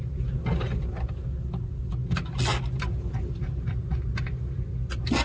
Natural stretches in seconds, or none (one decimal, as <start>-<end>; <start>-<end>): 0.0-5.2